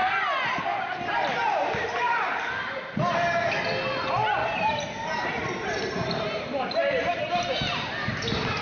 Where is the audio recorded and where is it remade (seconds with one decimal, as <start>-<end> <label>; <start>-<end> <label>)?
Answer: 0.0-1.6 recorded; 1.6-2.4 remade; 2.4-4.4 recorded; 4.4-7.2 remade; 7.2-8.6 recorded